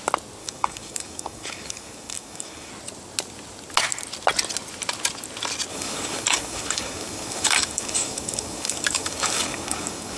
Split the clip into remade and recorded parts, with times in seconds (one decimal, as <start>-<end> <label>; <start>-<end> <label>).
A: 0.0-0.4 recorded; 0.4-2.7 remade; 2.7-5.7 recorded; 5.7-10.2 remade